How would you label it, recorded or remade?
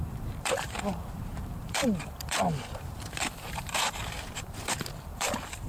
remade